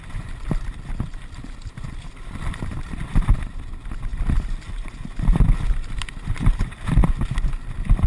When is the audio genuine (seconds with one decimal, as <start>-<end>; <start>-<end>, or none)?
0.0-8.1